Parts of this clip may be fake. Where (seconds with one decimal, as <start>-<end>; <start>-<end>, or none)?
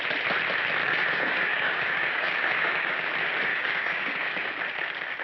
0.8-3.1; 3.5-4.6